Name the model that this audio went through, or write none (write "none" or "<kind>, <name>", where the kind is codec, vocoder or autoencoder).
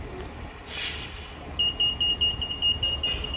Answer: none